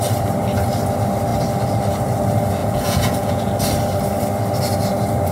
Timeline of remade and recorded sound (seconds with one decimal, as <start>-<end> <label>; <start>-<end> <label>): 0.0-2.6 recorded; 2.6-3.5 remade; 3.5-5.3 recorded